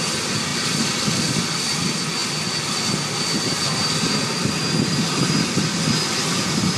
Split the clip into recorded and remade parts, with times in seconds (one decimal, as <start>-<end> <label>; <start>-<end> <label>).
0.0-2.2 remade; 2.2-6.3 recorded; 6.3-6.8 remade